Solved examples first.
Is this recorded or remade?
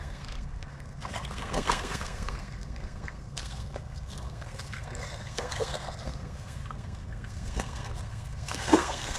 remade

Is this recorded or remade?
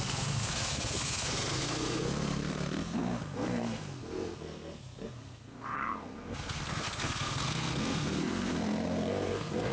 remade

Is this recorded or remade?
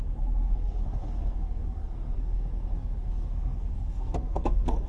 remade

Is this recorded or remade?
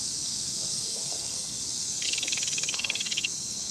remade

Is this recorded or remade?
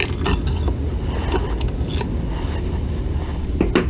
recorded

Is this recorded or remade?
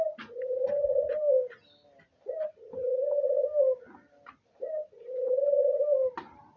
recorded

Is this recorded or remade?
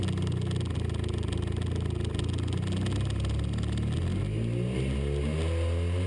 recorded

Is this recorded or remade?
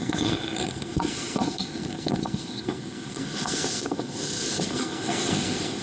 remade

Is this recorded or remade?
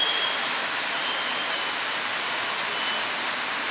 recorded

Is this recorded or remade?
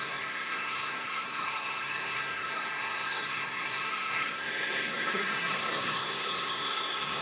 remade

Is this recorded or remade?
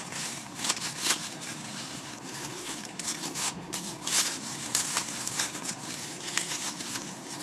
remade